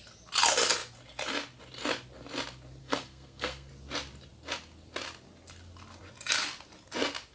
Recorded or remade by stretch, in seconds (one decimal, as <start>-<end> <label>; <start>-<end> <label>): 0.0-2.8 recorded; 2.8-3.7 remade; 3.7-7.3 recorded